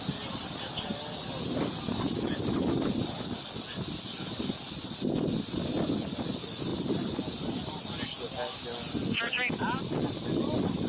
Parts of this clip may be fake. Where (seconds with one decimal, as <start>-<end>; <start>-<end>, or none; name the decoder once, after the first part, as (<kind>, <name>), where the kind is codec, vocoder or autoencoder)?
none